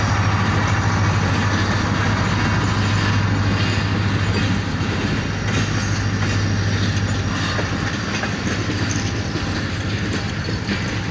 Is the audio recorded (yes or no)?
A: yes